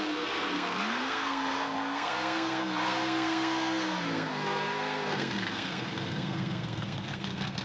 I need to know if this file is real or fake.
fake